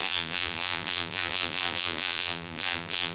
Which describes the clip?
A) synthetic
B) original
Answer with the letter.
A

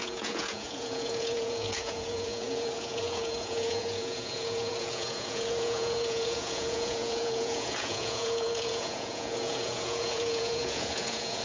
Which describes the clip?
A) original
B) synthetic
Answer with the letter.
B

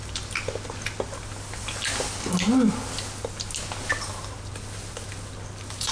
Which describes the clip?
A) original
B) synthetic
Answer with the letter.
A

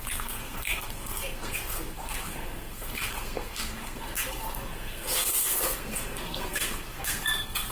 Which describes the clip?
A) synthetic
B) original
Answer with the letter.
A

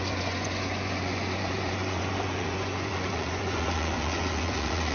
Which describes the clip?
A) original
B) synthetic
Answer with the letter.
B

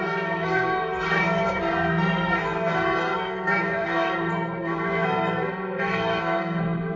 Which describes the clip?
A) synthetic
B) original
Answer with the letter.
A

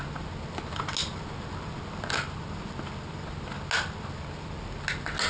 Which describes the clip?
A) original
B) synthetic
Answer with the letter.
A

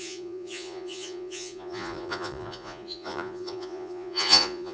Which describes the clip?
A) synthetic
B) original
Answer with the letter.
A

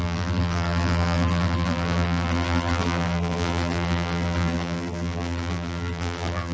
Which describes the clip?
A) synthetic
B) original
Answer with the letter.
A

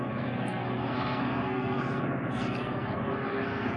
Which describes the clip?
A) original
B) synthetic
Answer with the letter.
B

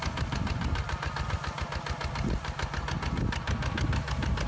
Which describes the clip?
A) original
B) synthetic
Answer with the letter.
A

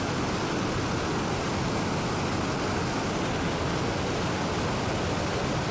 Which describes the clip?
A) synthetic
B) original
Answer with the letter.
B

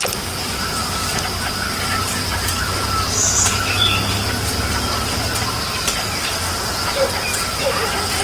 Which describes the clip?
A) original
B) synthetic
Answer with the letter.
A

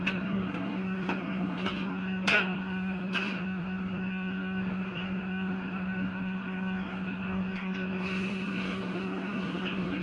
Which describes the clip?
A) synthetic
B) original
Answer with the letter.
A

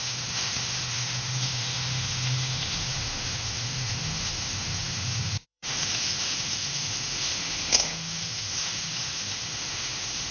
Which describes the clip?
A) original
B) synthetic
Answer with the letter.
B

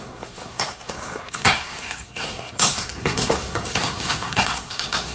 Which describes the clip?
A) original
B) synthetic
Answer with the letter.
B